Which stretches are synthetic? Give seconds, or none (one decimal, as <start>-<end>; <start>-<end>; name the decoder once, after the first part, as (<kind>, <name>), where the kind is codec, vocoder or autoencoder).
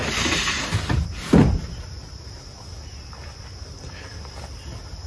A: none